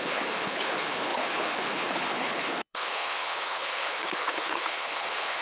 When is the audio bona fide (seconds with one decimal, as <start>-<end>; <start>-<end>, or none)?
none